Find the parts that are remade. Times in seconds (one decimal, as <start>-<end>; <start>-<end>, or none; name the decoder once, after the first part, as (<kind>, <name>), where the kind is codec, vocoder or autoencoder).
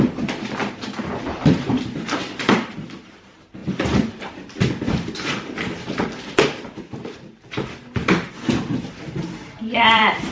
0.0-10.3 (vocoder, BigVGAN v2)